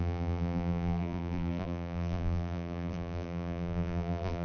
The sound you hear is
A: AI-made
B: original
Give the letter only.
A